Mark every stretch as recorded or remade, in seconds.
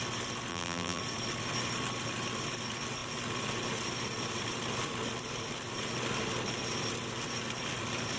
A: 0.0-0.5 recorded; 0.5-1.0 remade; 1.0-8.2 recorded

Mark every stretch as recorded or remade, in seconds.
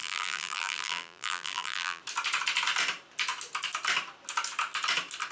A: 0.0-2.0 remade; 2.0-5.3 recorded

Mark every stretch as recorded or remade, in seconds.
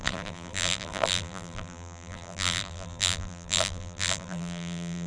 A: 0.0-5.1 remade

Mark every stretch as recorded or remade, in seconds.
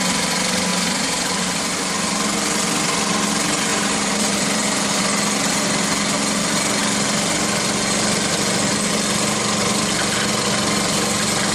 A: 0.0-0.7 recorded; 0.7-1.6 remade; 1.6-3.7 recorded; 3.7-5.0 remade; 5.0-11.5 recorded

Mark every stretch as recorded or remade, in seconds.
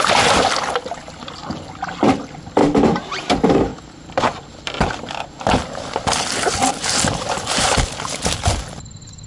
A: 0.0-2.6 recorded; 2.6-3.3 remade; 3.3-3.7 recorded; 3.7-4.2 remade; 4.2-9.3 recorded